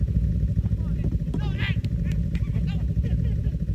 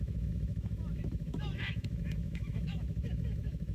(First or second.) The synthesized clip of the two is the second